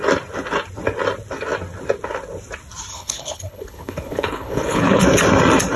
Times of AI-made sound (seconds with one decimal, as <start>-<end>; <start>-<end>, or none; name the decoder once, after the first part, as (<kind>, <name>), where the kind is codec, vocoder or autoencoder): 2.9-5.0 (codec, HILCodec)